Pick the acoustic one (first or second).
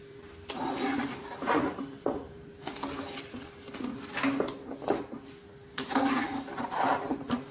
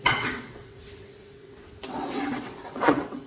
first